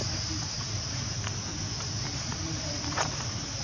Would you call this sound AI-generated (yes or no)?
no